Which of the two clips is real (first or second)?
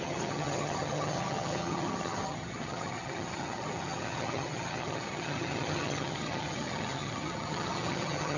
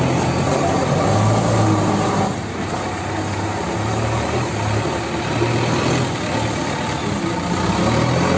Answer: second